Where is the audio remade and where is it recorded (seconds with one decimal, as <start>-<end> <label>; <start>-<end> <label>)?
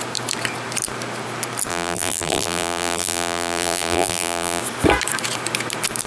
0.0-1.7 recorded; 1.7-4.6 remade; 4.6-6.1 recorded